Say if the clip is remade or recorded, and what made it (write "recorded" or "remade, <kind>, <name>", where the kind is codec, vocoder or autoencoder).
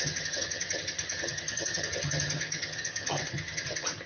remade, vocoder, HiFi-GAN